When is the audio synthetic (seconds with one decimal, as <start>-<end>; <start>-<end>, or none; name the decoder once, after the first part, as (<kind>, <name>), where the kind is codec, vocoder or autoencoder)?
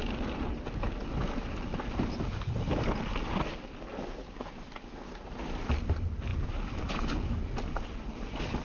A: 4.2-4.8 (vocoder, BigVGAN v2); 6.3-7.5